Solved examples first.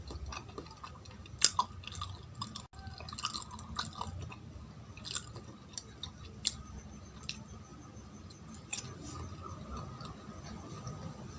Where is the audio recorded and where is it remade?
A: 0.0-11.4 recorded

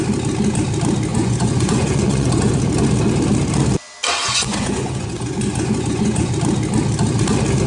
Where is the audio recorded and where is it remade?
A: 0.0-1.1 recorded; 1.1-2.5 remade; 2.5-4.2 recorded; 4.2-6.3 remade; 6.3-7.7 recorded